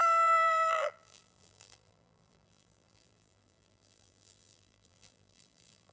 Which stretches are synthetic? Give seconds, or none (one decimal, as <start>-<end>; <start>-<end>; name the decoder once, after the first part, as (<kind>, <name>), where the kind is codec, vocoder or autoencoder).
0.0-5.9 (vocoder, BigVGAN v2)